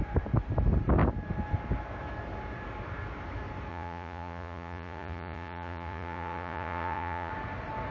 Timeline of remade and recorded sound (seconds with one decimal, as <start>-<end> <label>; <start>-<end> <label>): 0.0-3.7 recorded; 3.7-7.3 remade; 7.3-7.9 recorded

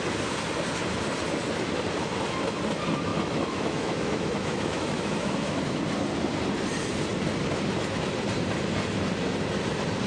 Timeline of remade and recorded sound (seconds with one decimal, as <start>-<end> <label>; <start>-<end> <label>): 0.0-3.1 recorded; 3.1-5.8 remade; 5.8-10.1 recorded

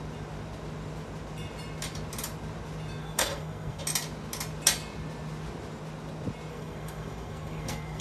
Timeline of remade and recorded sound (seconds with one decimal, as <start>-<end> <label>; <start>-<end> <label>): 0.0-3.0 recorded; 3.0-3.8 remade; 3.8-6.5 recorded; 6.5-8.0 remade

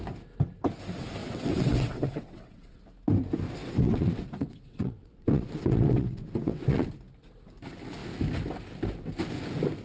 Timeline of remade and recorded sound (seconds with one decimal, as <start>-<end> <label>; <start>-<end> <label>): 0.0-1.2 recorded; 1.2-2.8 remade; 2.8-3.6 recorded; 3.6-6.9 remade; 6.9-9.8 recorded